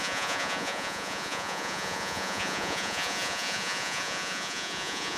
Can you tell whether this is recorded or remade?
remade